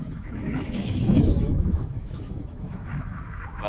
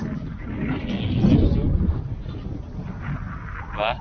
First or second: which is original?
second